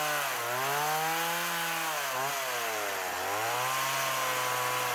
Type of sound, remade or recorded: recorded